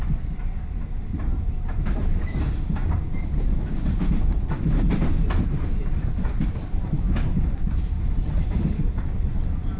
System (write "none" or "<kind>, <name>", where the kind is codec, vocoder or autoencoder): vocoder, BigVGAN v2